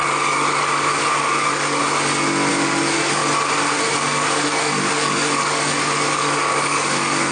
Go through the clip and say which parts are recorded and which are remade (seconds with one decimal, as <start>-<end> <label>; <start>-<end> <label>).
0.0-1.8 remade; 1.8-2.5 recorded; 2.5-3.2 remade; 3.2-3.9 recorded; 3.9-7.3 remade

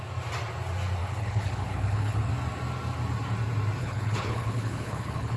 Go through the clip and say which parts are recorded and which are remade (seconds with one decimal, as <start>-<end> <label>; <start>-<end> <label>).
0.0-1.0 recorded; 1.0-2.3 remade; 2.3-3.8 recorded; 3.8-5.4 remade

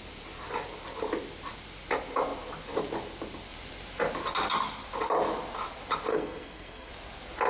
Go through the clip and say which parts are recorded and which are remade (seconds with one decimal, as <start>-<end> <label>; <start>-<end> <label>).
0.0-6.1 recorded; 6.1-6.9 remade; 6.9-7.5 recorded

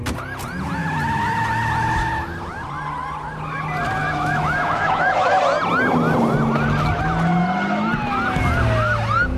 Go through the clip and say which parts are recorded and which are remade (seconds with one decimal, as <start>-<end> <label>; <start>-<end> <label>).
0.0-4.0 recorded; 4.0-5.4 remade; 5.4-9.4 recorded